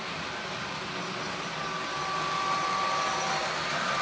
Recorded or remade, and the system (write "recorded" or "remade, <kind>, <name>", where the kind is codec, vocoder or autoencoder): recorded